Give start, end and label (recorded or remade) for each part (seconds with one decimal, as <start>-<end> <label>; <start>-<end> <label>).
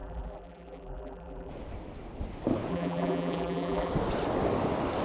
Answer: 0.0-1.5 remade; 1.5-2.7 recorded; 2.7-3.9 remade; 3.9-5.0 recorded